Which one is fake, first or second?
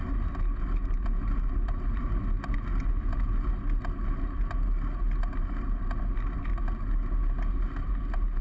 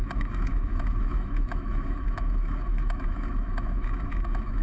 second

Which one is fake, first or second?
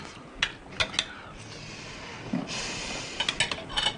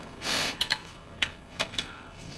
second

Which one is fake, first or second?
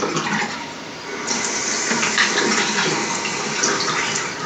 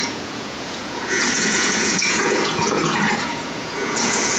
second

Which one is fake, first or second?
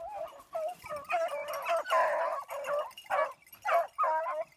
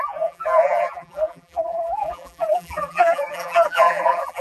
second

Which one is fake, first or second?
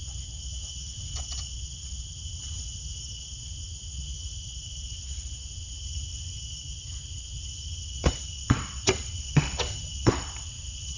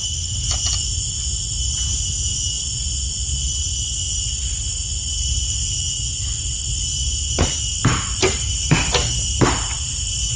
first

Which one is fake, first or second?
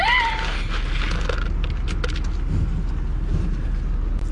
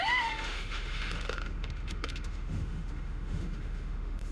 second